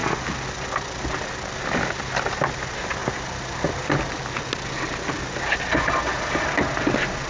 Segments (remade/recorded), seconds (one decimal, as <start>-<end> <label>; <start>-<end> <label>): 0.0-7.3 recorded